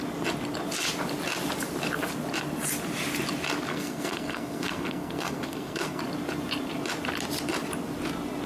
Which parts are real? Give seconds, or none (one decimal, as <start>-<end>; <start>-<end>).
0.0-3.7; 6.0-8.5